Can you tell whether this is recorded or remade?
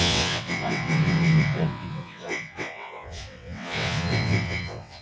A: remade